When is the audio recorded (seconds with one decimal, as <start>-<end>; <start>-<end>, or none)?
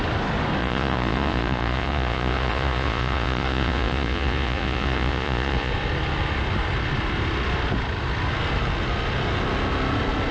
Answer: 0.0-0.6; 5.7-10.3